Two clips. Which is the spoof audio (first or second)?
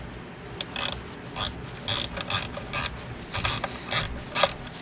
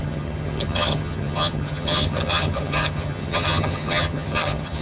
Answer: second